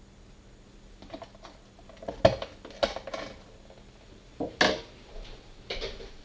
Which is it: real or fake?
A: real